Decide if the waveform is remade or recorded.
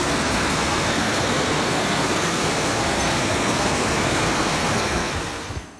remade